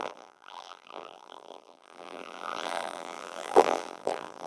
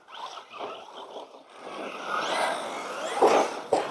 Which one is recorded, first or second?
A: second